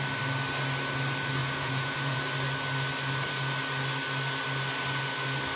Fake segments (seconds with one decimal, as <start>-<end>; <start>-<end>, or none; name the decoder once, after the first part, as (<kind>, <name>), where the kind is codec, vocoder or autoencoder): 1.4-2.2 (vocoder, Vocos)